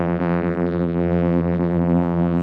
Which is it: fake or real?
fake